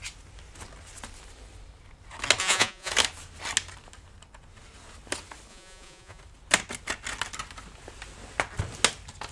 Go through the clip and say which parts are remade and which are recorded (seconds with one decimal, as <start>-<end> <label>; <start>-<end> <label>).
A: 0.0-2.4 recorded; 2.4-2.9 remade; 2.9-5.5 recorded; 5.5-6.2 remade; 6.2-9.3 recorded